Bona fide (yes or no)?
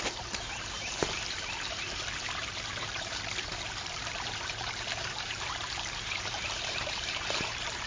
no